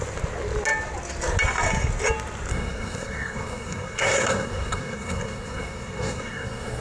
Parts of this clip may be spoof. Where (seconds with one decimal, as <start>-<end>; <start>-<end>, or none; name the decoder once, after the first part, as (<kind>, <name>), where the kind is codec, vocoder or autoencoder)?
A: 2.5-6.8 (codec, SNAC)